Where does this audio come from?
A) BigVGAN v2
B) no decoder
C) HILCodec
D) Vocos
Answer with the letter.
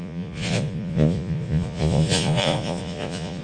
D